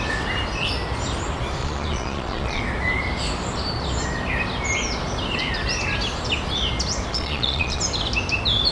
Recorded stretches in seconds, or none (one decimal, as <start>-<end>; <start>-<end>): 0.0-1.6; 2.6-7.1; 7.8-8.7